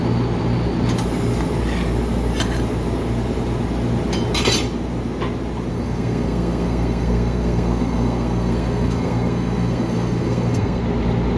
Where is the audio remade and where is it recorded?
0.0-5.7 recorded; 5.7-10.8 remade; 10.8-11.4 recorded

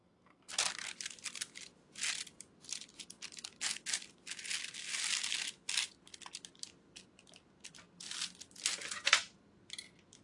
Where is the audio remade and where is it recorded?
0.0-0.5 remade; 0.5-10.2 recorded